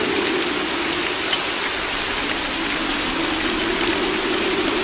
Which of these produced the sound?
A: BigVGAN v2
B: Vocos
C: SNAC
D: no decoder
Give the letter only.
D